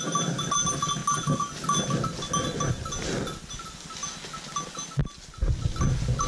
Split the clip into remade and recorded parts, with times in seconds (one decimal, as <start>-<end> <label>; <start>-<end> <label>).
0.0-6.3 recorded